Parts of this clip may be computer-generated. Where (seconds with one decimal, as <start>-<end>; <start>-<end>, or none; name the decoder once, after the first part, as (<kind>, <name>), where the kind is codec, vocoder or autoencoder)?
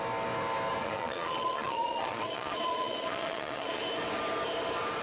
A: 0.8-3.8 (vocoder, Vocos)